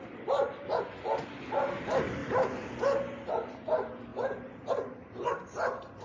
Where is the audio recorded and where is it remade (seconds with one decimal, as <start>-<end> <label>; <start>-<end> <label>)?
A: 0.0-6.0 recorded